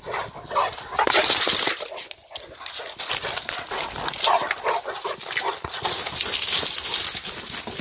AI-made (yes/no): no